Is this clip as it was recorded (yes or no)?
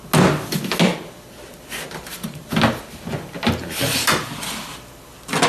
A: yes